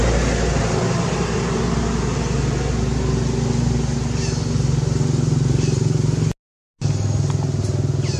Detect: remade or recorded recorded